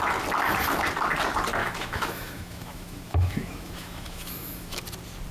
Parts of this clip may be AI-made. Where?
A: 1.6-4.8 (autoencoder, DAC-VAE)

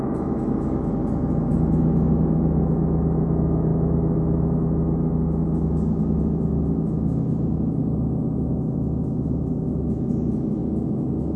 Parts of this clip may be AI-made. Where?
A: 0.0-1.0 (autoencoder, DAC-VAE); 1.5-7.8; 8.5-10.6